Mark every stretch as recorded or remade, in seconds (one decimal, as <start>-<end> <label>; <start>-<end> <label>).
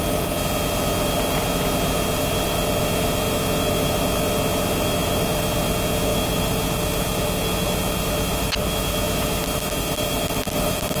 0.0-11.0 recorded